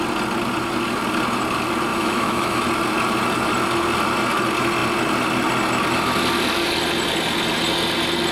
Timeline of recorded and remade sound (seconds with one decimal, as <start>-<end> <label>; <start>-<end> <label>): 0.0-1.9 recorded; 1.9-2.6 remade; 2.6-8.3 recorded